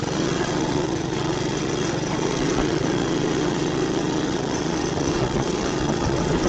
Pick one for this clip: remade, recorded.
remade